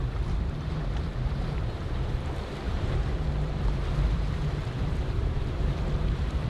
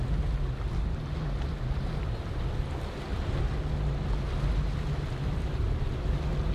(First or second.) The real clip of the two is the second